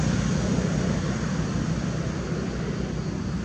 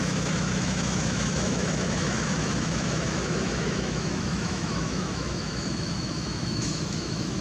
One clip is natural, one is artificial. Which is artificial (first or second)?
second